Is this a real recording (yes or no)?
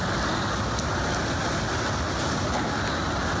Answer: yes